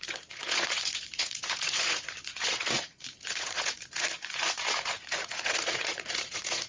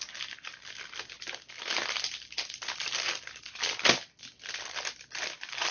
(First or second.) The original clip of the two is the second